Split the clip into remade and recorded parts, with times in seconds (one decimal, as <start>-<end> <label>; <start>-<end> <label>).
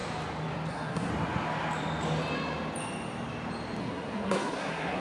0.0-0.7 recorded; 0.7-1.1 remade; 1.1-3.8 recorded; 3.8-5.0 remade